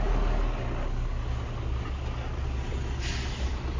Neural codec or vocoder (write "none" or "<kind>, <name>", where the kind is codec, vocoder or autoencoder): none